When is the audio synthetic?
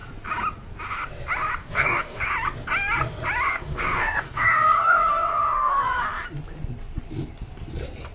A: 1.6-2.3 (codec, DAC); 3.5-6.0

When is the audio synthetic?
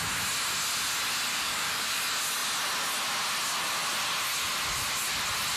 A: 1.3-2.0 (codec, DAC)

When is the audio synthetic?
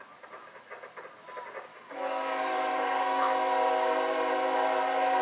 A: 1.7-3.3 (codec, DAC)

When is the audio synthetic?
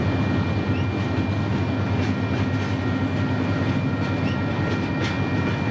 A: none